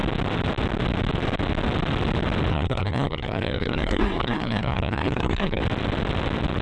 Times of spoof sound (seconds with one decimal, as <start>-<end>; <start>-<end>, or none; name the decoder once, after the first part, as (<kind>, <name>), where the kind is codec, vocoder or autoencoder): 2.5-5.6 (codec, SNAC)